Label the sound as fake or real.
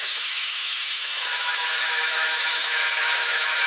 fake